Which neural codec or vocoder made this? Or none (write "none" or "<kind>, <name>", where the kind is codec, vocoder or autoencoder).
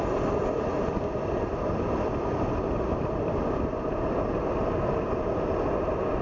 none